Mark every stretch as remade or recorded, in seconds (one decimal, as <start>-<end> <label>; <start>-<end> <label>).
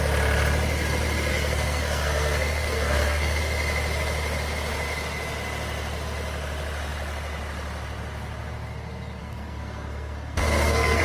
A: 0.0-1.3 recorded; 1.3-3.4 remade; 3.4-9.2 recorded; 9.2-11.0 remade